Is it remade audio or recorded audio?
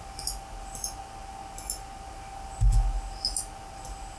recorded